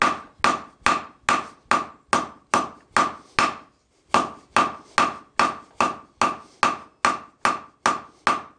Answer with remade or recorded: recorded